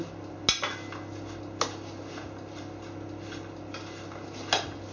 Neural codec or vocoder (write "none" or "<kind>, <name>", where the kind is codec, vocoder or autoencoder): none